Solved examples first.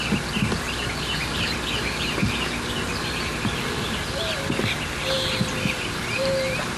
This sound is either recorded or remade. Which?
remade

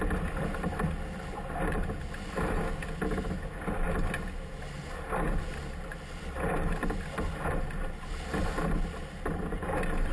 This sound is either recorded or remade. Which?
recorded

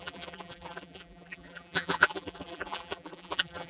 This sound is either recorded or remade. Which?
remade